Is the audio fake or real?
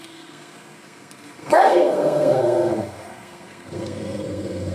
fake